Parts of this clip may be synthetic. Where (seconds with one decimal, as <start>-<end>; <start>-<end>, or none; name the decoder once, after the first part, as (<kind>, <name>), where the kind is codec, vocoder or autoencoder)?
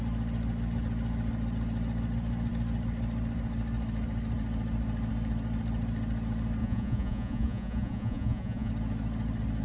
6.6-8.7 (vocoder, Vocos)